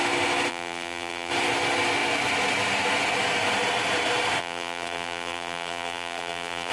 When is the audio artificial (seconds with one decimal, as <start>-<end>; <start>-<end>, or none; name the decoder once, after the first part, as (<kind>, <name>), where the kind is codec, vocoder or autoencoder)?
0.5-1.3 (vocoder, BigVGAN v2); 4.4-6.7